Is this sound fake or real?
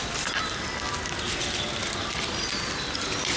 real